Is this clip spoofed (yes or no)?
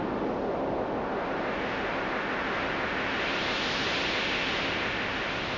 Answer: no